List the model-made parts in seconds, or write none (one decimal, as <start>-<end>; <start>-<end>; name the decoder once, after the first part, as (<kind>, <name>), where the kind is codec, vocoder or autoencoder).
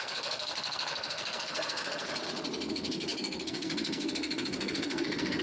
0.0-2.1 (codec, SNAC); 2.7-5.4